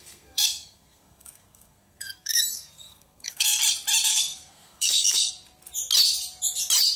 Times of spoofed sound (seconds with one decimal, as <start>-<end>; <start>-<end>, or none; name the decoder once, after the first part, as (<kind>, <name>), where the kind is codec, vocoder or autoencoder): 0.0-3.6 (codec, SNAC); 4.1-5.3